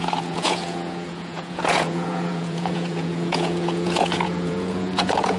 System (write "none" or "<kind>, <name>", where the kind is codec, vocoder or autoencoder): vocoder, Vocos